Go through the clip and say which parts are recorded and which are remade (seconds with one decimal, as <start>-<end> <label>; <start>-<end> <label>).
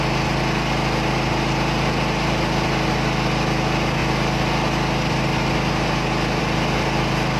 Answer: 0.0-7.4 recorded